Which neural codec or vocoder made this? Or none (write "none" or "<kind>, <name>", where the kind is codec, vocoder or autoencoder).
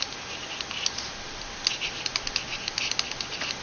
none